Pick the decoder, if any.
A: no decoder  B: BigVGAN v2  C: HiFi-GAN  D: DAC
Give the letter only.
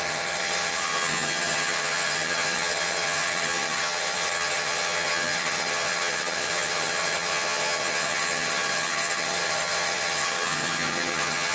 C